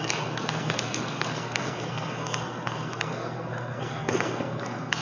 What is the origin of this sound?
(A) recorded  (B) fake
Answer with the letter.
B